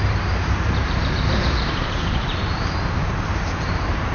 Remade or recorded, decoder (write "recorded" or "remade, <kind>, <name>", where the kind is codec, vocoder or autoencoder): remade, vocoder, BigVGAN v2